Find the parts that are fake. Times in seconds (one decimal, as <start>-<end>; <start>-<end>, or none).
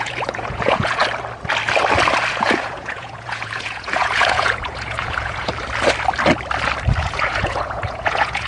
0.0-1.0; 2.3-5.5; 7.0-8.5